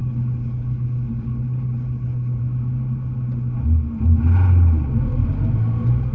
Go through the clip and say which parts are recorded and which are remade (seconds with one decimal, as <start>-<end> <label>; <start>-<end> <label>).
0.0-2.4 remade; 2.4-6.1 recorded